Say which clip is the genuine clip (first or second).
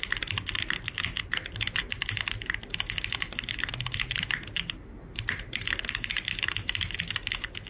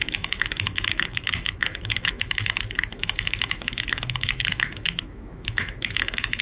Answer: first